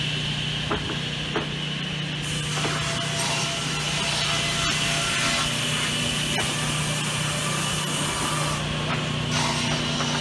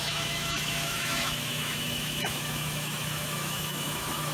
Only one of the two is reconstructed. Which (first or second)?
second